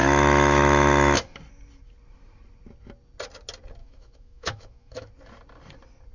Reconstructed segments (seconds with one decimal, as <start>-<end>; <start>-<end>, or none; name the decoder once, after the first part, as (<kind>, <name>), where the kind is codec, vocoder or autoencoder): 0.0-1.4 (autoencoder, DAC-VAE); 3.8-5.1